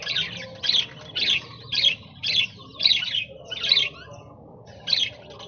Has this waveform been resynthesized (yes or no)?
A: no